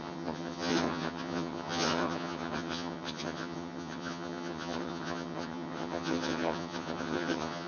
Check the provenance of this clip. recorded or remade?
remade